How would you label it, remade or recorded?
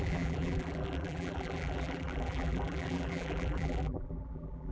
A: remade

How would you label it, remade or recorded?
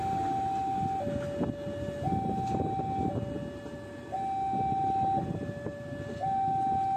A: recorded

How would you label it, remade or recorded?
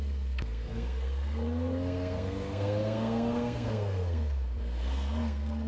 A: remade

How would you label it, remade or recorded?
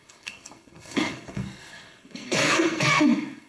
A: remade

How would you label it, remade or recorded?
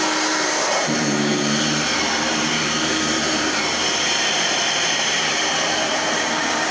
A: remade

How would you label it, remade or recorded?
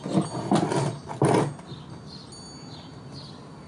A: recorded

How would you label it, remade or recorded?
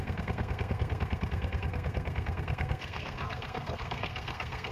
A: remade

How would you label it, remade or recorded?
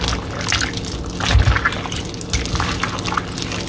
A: recorded